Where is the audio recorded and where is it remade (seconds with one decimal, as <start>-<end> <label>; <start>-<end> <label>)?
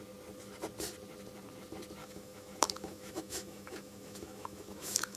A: 0.0-2.0 recorded; 2.0-5.2 remade